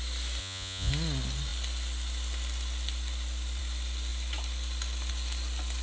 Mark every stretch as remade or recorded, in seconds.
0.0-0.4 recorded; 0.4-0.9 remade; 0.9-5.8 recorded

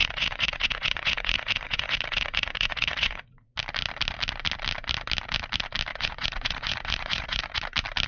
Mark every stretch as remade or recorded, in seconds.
0.0-3.5 remade; 3.5-5.9 recorded; 5.9-7.6 remade; 7.6-8.1 recorded

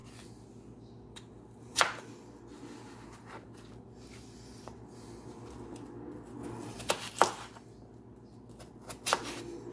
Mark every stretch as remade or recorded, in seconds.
0.0-9.7 recorded

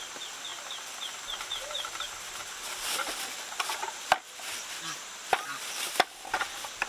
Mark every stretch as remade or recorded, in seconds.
0.0-6.9 recorded

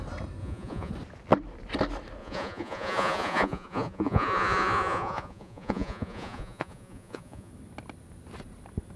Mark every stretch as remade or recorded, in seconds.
0.0-0.4 recorded; 0.4-0.9 remade; 0.9-2.2 recorded; 2.2-7.5 remade; 7.5-9.0 recorded

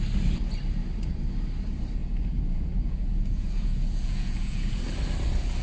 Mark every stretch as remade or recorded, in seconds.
0.0-2.0 recorded; 2.0-4.8 remade; 4.8-5.6 recorded

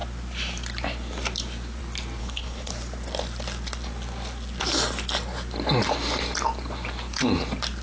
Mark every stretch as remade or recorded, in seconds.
0.0-2.2 recorded; 2.2-2.7 remade; 2.7-7.8 recorded

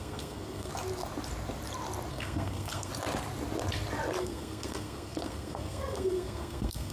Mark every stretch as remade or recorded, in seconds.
0.0-0.7 remade; 0.7-2.1 recorded; 2.1-2.9 remade; 2.9-4.2 recorded; 4.2-6.9 remade